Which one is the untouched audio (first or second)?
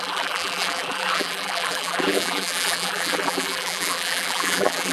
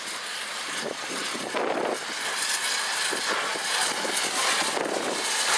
second